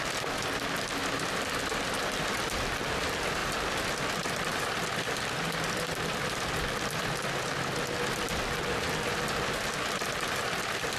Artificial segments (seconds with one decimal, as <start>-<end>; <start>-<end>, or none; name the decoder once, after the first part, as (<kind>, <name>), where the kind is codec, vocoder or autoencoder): none